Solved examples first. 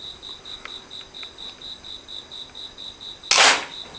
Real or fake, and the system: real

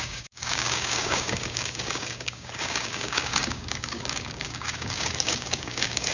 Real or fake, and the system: fake, codec, DAC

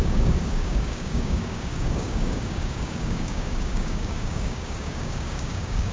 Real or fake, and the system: fake, codec, DAC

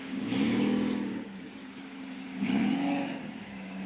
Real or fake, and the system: fake, codec, DAC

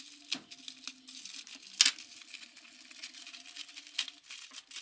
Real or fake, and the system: real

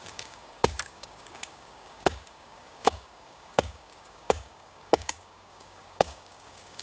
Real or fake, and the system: fake, codec, DAC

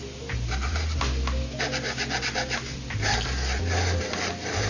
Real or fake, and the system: real